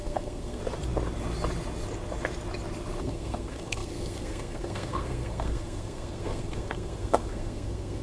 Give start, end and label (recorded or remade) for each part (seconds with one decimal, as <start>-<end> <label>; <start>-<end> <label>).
0.0-0.6 remade; 0.6-3.0 recorded; 3.0-8.0 remade